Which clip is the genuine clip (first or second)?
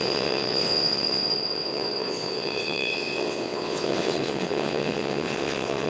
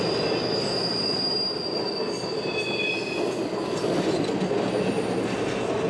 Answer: second